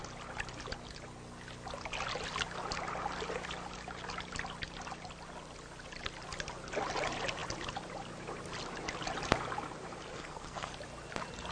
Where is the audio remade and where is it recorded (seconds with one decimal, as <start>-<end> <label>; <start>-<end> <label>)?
0.0-10.1 recorded; 10.1-10.7 remade; 10.7-11.5 recorded